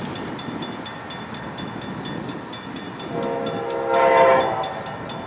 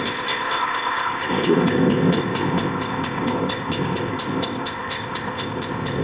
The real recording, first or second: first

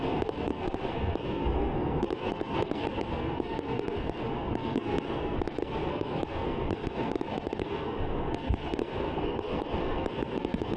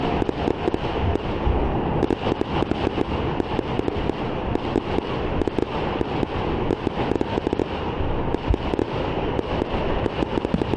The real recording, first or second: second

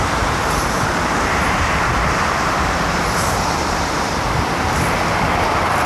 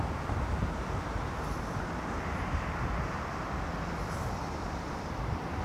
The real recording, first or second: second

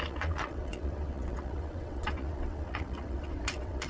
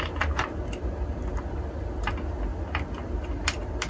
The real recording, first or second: second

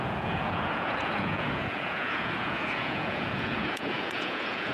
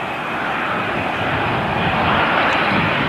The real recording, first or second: second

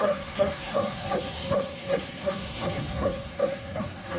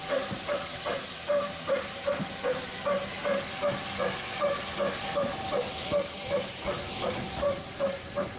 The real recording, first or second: second